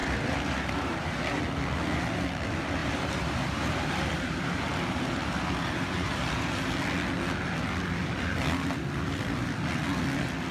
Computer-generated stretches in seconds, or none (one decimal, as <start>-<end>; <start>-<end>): 0.0-1.4; 2.8-6.7

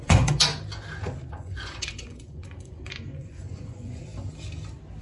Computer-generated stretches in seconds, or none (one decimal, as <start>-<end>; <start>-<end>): 0.0-0.5; 1.3-4.1

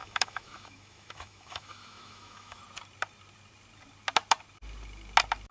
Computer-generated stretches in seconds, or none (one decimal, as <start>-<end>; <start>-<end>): 0.0-2.6

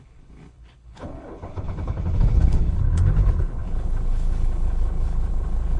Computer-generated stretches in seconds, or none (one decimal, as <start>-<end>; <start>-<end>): 0.0-5.8

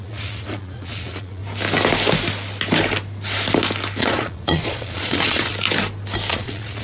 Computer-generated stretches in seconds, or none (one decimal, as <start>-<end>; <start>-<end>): 0.0-1.4; 4.0-5.5; 6.3-6.8

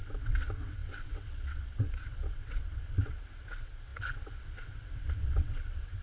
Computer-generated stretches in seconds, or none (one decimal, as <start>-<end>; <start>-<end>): 0.0-6.0

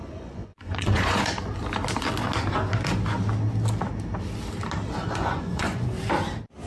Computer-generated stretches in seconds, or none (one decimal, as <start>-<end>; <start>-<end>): 0.0-1.3; 5.0-6.0

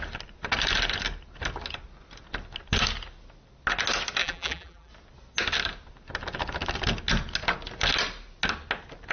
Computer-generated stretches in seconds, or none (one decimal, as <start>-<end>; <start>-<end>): 4.2-4.9